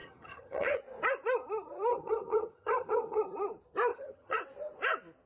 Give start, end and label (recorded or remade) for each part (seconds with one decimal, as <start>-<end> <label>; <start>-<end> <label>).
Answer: 0.0-0.8 remade; 0.8-1.9 recorded; 1.9-3.2 remade; 3.2-3.9 recorded; 3.9-4.4 remade; 4.4-5.3 recorded